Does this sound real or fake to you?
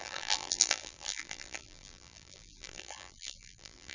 fake